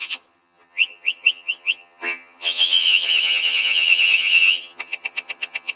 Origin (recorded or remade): remade